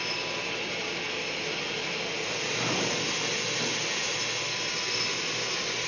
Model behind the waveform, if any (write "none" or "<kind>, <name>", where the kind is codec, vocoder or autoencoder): none